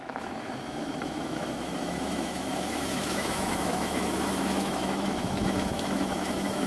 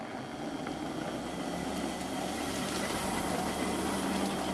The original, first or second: second